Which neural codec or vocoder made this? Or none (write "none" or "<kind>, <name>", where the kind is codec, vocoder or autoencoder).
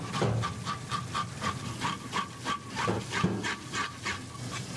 none